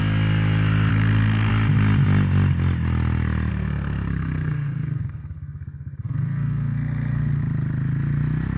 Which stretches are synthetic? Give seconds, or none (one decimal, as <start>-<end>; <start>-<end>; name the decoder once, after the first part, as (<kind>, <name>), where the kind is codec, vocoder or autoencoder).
0.9-1.5 (codec, SNAC); 3.5-7.4